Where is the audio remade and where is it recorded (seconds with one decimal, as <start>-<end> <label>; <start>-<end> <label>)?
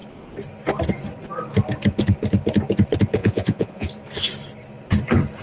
0.0-3.2 recorded; 3.2-3.9 remade; 3.9-5.4 recorded